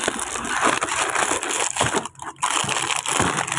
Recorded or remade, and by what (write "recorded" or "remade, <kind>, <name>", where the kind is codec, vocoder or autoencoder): recorded